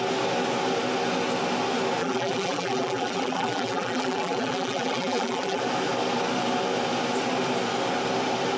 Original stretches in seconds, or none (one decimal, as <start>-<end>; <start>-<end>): 0.0-2.0; 5.6-8.6